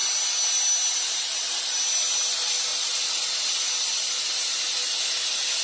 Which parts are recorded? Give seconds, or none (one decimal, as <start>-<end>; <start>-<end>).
0.0-5.6